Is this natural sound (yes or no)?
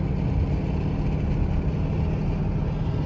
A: yes